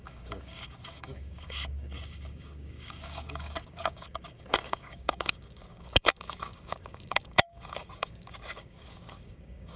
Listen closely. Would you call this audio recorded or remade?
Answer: remade